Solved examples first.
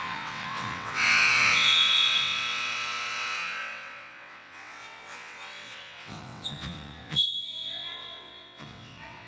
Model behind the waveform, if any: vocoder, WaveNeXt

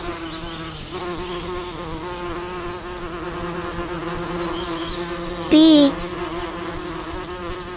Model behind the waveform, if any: none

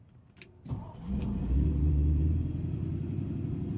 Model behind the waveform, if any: vocoder, BigVGAN v2